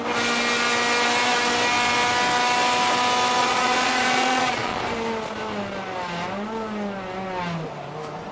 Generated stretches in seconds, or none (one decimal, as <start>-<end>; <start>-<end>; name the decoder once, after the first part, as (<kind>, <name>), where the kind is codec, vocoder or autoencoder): 3.4-4.8 (vocoder, Vocos)